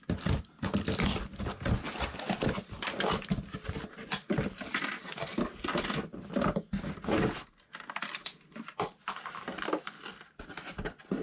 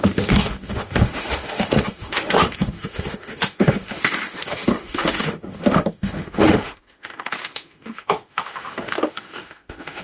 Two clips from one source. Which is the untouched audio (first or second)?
first